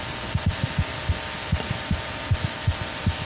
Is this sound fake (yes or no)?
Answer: no